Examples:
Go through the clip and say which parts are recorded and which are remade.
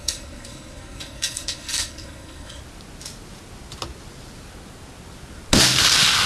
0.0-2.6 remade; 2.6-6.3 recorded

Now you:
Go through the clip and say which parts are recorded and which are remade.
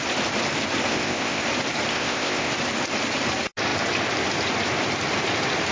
0.0-0.9 recorded; 0.9-1.4 remade; 1.4-1.9 recorded; 1.9-2.5 remade; 2.5-5.7 recorded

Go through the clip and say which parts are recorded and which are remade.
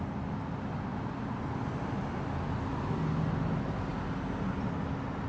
0.0-5.3 recorded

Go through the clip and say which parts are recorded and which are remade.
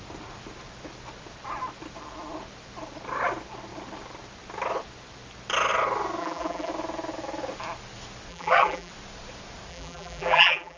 0.0-6.2 recorded; 6.2-6.7 remade; 6.7-8.3 recorded; 8.3-8.9 remade; 8.9-9.7 recorded; 9.7-10.8 remade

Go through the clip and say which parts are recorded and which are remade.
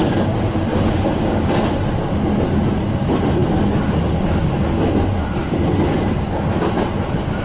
0.0-0.7 recorded; 0.7-1.4 remade; 1.4-7.4 recorded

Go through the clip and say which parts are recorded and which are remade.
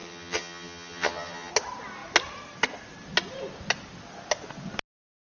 0.0-1.5 remade; 1.5-5.2 recorded